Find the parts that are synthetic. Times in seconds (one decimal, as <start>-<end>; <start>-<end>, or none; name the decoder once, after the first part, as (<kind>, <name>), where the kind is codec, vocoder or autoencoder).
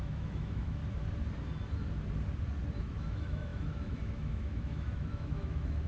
0.0-0.8 (autoencoder, DAC-VAE); 2.8-5.9